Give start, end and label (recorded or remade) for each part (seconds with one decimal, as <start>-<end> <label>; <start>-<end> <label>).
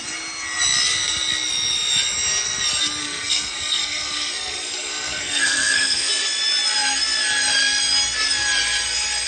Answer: 0.0-3.0 recorded; 3.0-6.1 remade; 6.1-9.3 recorded